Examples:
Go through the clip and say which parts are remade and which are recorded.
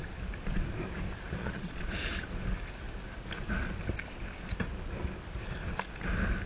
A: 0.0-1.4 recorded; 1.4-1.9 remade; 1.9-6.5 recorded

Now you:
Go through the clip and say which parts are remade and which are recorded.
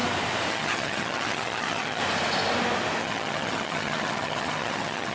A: 0.0-0.5 recorded; 0.5-2.0 remade; 2.0-3.0 recorded; 3.0-5.1 remade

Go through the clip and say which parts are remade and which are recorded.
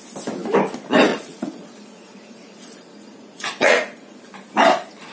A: 0.0-1.1 recorded; 1.1-4.2 remade; 4.2-5.1 recorded